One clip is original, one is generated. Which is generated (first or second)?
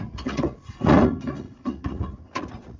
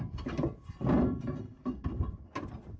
first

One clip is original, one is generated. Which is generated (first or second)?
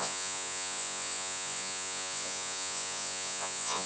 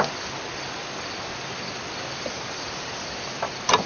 first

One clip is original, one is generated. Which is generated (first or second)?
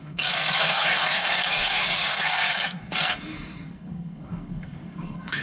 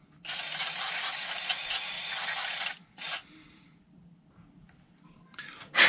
first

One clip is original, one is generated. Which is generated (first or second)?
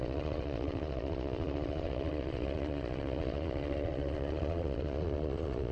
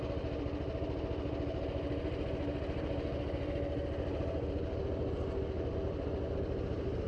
first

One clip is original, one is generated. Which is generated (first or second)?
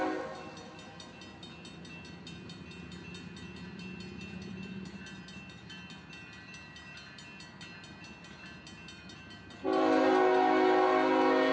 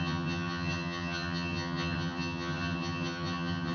second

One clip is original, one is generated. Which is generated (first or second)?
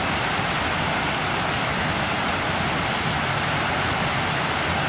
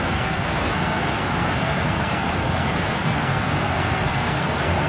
second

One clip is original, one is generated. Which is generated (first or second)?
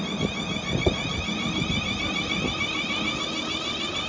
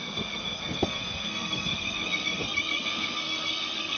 second